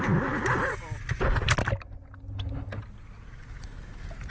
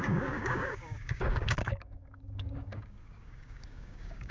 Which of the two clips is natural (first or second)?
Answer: first